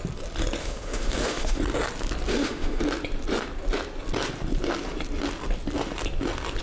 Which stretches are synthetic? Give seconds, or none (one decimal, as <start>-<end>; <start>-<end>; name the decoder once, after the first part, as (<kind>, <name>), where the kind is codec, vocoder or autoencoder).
0.6-1.6 (autoencoder, DAC-VAE); 2.3-2.8